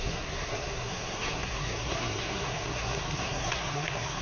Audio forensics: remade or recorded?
remade